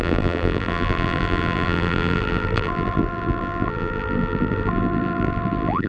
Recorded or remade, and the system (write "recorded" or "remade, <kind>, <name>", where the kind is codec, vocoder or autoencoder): remade, vocoder, BigVGAN v2